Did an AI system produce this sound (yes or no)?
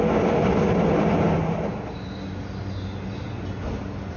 no